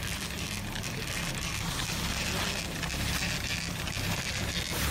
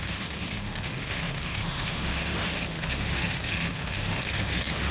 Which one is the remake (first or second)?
second